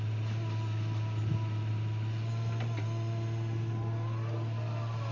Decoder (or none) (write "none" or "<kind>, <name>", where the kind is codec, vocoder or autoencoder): none